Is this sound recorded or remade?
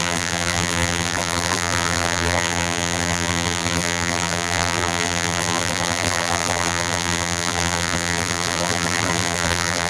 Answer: remade